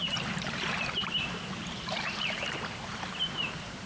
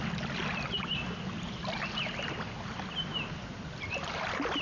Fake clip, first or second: first